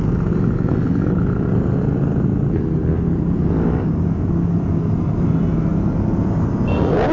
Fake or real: real